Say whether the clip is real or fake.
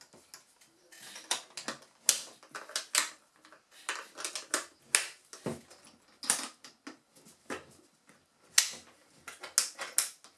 real